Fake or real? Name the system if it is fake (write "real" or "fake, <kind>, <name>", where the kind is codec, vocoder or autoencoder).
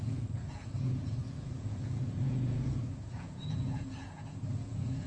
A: fake, vocoder, Vocos